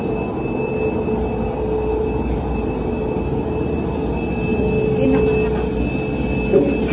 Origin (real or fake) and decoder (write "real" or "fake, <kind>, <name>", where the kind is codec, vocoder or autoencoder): real